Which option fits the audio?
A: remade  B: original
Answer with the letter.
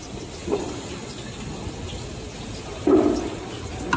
B